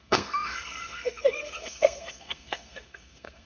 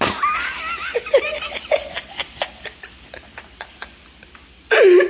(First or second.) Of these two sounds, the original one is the second